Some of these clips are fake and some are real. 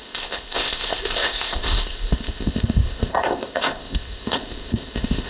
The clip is fake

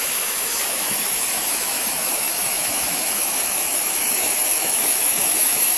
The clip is fake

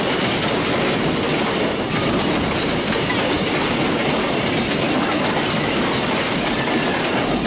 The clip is real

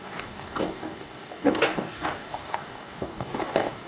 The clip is fake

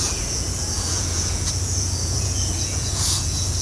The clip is fake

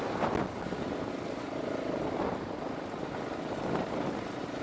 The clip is real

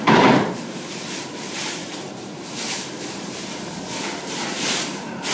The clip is fake